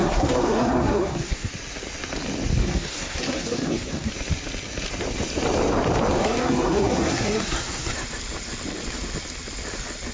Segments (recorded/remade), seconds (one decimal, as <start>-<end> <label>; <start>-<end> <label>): 0.0-1.5 remade; 1.5-2.6 recorded; 2.6-4.1 remade; 4.1-6.2 recorded; 6.2-7.9 remade; 7.9-10.1 recorded